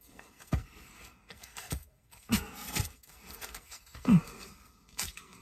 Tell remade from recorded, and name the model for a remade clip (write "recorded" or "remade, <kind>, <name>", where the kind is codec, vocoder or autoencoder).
remade, codec, SNAC